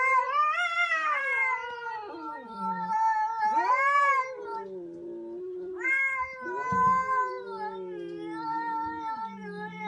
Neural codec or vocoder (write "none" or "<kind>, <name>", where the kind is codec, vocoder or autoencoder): none